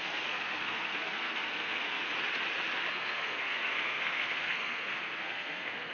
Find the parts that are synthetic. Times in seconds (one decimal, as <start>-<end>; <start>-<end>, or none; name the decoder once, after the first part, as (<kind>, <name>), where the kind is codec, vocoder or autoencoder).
0.0-2.0 (codec, SNAC); 2.9-5.9